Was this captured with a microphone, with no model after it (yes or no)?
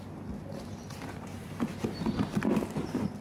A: yes